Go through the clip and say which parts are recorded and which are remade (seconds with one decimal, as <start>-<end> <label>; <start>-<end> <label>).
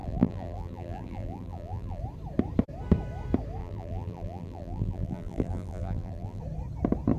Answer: 0.0-2.0 remade; 2.0-3.6 recorded; 3.6-6.4 remade; 6.4-7.2 recorded